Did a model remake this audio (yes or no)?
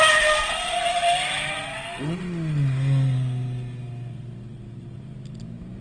no